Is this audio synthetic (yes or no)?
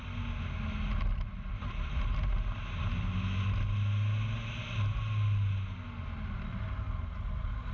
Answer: no